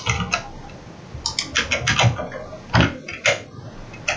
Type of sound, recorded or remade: recorded